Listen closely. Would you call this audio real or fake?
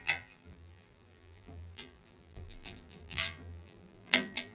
fake